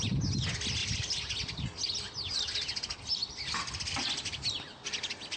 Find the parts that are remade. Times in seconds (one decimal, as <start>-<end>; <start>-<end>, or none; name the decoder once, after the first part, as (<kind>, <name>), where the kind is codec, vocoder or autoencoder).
none